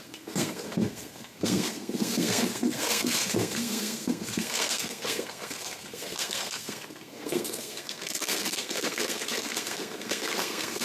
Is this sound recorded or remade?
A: remade